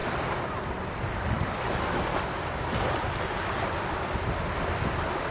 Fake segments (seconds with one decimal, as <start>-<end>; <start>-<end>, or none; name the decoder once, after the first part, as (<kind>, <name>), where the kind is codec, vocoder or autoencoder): none